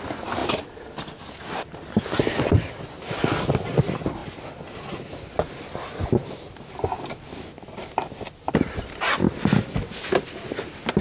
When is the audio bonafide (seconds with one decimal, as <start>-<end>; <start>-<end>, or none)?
0.0-11.0